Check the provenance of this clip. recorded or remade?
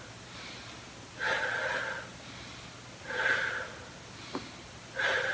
recorded